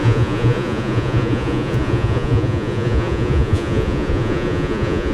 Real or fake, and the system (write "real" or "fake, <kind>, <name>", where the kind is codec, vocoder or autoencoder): fake, vocoder, Vocos